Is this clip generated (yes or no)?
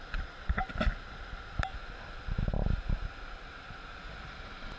yes